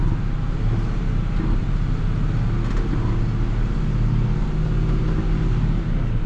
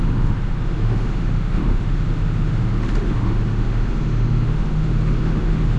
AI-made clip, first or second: second